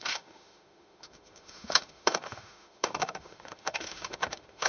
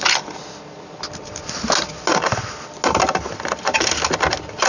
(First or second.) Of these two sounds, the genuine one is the second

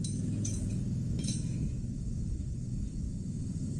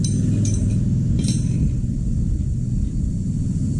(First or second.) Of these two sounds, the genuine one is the second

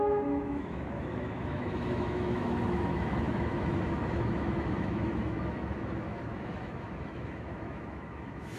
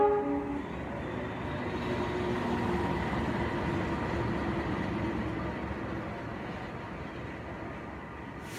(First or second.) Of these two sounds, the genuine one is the second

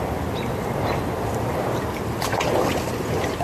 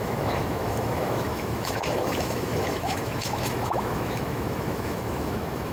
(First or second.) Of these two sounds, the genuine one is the first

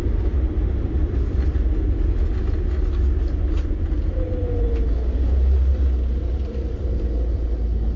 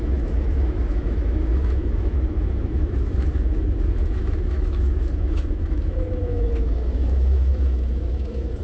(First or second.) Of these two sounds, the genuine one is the first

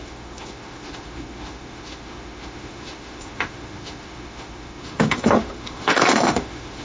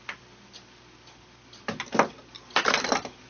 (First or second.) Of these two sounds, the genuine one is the second